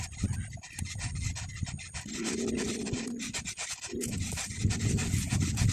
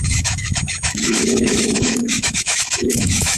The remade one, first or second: second